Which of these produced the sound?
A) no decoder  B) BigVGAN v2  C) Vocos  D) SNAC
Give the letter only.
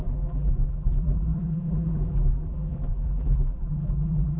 B